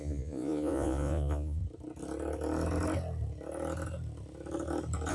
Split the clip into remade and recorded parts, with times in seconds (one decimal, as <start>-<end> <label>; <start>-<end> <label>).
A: 0.0-1.6 remade; 1.6-5.1 recorded